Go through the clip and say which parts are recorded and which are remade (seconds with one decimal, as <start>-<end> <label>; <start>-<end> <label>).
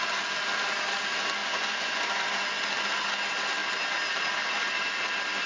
0.0-1.4 recorded; 1.4-2.0 remade; 2.0-5.5 recorded